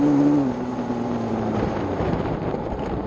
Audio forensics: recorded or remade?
remade